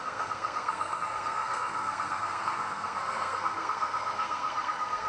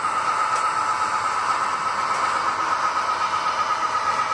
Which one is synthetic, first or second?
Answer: first